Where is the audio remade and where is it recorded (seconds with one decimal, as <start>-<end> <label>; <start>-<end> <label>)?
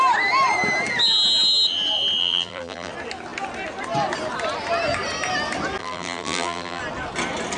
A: 0.0-2.2 recorded; 2.2-2.9 remade; 2.9-5.8 recorded; 5.8-6.8 remade; 6.8-7.6 recorded